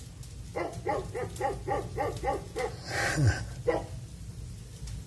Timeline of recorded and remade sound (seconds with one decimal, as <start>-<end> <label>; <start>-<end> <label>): 0.0-5.1 recorded